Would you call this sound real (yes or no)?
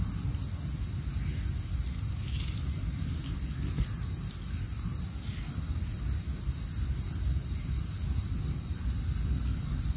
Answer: yes